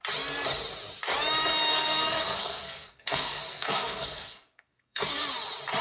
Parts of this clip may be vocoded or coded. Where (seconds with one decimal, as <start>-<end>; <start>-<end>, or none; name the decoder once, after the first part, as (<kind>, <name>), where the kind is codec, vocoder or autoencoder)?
1.7-5.2 (codec, SNAC)